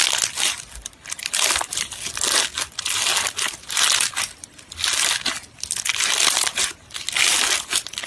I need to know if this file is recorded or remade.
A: recorded